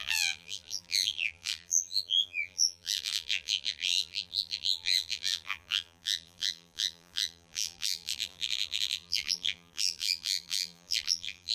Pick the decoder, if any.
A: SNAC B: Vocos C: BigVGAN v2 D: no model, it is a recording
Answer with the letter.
C